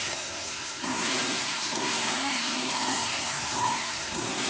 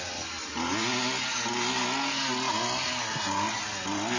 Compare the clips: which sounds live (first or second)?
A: second